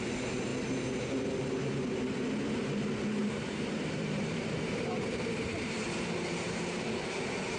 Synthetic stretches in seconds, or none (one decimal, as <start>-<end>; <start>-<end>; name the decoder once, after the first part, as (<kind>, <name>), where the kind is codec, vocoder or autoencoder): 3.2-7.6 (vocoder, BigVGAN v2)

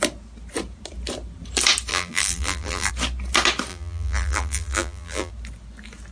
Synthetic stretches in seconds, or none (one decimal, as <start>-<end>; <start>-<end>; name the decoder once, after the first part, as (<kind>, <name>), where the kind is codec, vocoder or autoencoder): 1.9-2.9 (vocoder, BigVGAN v2); 3.7-5.3

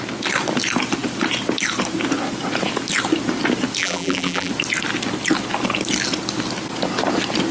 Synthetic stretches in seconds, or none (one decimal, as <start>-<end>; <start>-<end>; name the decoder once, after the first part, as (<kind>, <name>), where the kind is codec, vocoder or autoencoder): 3.8-4.5 (vocoder, BigVGAN v2)

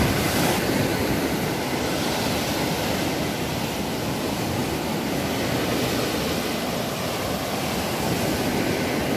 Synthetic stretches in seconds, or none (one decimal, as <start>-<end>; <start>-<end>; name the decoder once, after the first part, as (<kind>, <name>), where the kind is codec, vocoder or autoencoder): none

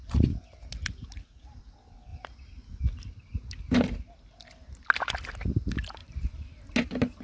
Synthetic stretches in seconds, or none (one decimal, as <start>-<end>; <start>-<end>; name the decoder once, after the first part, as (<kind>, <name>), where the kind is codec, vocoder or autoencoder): 6.0-6.6 (vocoder, BigVGAN v2)

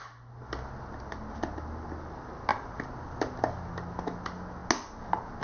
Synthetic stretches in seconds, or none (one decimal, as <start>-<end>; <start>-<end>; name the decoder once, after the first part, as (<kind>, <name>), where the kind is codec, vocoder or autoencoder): 2.5-3.4 (vocoder, BigVGAN v2)